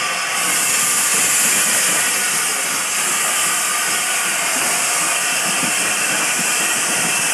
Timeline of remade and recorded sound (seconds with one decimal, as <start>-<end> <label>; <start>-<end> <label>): 0.0-1.1 remade; 1.1-5.5 recorded; 5.5-7.3 remade